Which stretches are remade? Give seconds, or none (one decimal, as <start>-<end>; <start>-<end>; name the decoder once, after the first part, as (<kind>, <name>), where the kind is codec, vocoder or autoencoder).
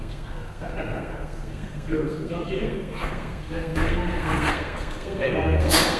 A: 0.0-6.0 (codec, SNAC)